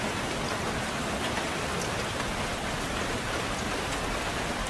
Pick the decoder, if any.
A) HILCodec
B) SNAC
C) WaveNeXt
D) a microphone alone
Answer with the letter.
D